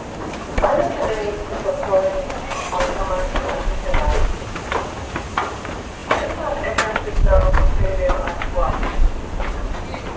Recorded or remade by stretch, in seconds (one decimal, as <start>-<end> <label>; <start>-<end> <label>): 0.0-10.2 recorded